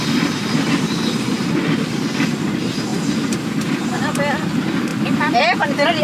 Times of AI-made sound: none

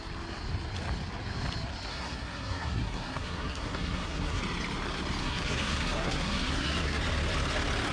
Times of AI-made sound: 1.9-4.4 (codec, SNAC); 5.2-7.0

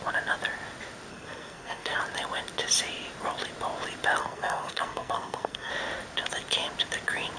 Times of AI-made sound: 1.1-2.0 (codec, SNAC); 4.2-5.7

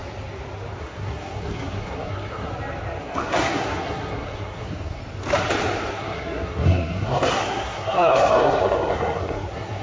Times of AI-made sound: 0.8-2.5 (codec, SNAC); 3.0-5.0; 5.9-9.8